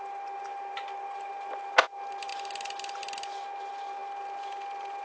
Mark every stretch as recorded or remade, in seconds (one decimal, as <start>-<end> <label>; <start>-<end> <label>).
0.0-5.0 recorded